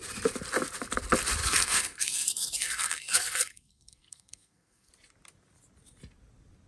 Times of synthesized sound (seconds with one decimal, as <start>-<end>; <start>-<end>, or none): 1.4-4.9